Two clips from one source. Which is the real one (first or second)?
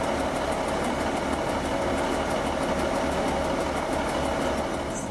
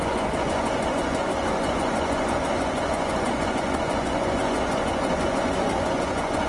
first